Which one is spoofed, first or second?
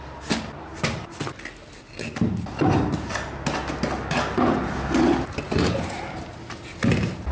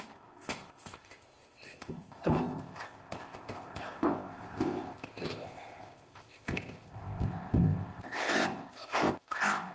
second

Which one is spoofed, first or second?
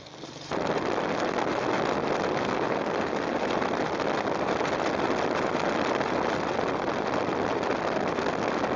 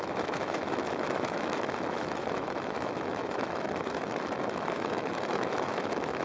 second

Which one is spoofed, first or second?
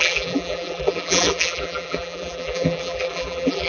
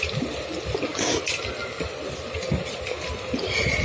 first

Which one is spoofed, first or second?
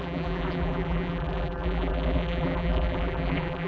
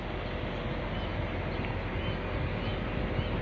first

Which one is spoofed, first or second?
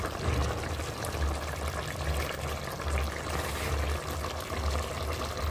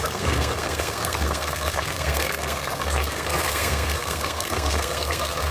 second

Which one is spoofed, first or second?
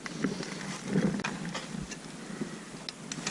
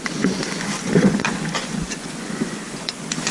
second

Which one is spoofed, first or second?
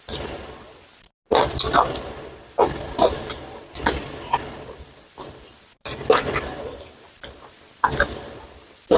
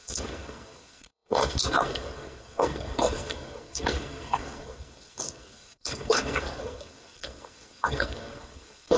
second